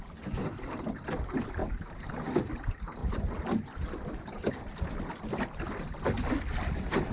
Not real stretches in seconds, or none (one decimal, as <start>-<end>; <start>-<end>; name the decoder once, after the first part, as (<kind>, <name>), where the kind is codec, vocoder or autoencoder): 3.0-4.5 (vocoder, BigVGAN v2)